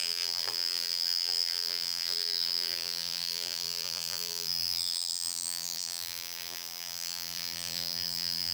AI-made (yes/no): yes